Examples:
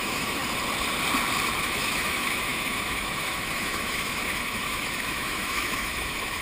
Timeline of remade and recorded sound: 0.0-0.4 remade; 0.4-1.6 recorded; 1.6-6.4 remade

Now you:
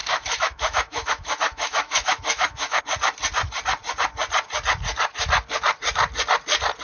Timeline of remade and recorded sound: 0.0-2.8 remade; 2.8-6.8 recorded